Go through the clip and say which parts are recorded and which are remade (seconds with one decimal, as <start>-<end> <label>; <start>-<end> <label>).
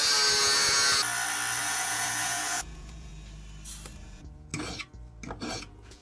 0.0-1.6 recorded; 1.6-3.1 remade; 3.1-4.0 recorded; 4.0-4.5 remade; 4.5-5.5 recorded; 5.5-6.0 remade